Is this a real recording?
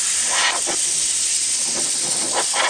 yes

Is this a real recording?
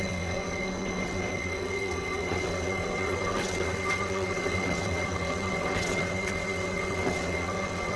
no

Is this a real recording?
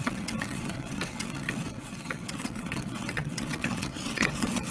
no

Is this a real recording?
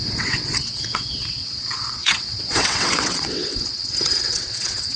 no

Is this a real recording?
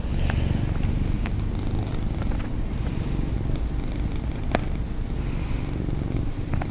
yes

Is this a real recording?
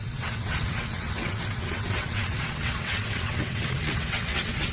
no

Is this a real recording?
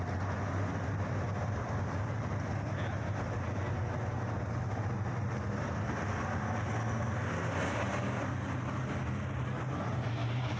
yes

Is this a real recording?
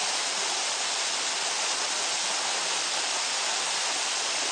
yes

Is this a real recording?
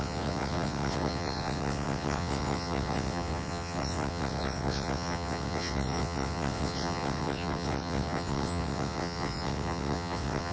no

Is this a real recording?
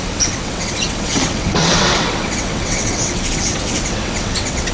no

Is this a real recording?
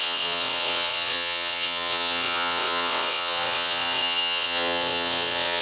no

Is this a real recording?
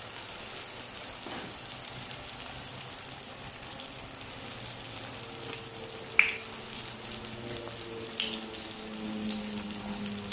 yes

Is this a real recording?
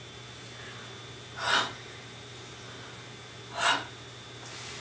yes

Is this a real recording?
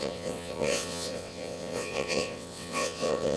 no